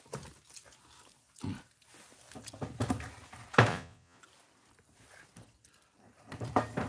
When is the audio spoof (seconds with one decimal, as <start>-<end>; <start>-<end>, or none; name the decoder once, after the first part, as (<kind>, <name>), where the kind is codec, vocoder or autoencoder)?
3.7-4.2 (vocoder, Vocos)